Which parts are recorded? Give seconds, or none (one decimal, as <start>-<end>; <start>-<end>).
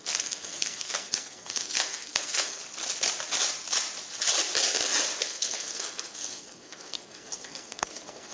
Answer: 2.6-5.2